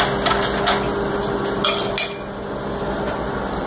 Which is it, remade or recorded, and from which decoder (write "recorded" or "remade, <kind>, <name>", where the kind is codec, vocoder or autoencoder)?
recorded